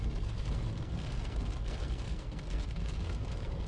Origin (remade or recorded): remade